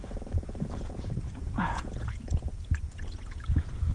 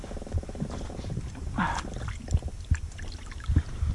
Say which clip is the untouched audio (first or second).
second